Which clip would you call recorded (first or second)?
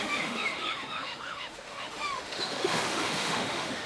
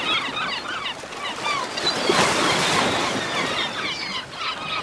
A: second